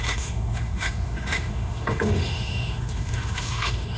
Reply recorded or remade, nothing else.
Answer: remade